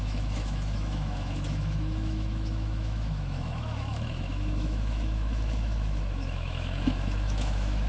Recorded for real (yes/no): no